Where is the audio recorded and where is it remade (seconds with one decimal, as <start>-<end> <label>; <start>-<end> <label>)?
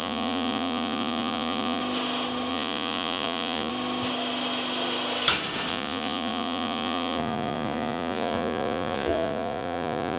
0.0-1.8 remade; 1.8-2.5 recorded; 2.5-3.7 remade; 3.7-5.7 recorded; 5.7-10.2 remade